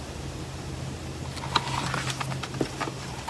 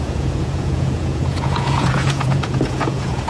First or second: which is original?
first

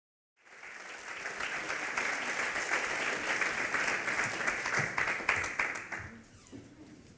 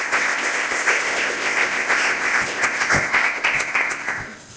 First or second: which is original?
first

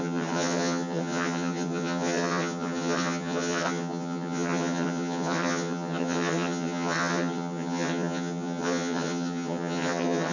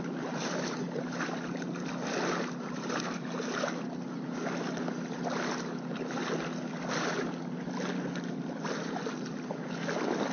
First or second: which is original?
second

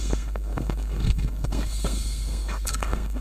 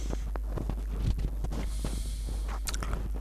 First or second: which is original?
second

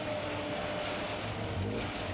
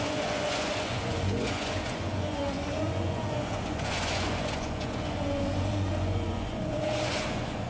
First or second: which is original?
first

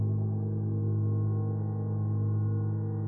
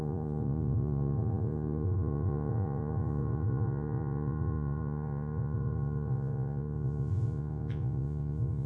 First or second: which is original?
first